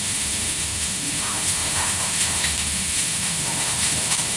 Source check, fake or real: fake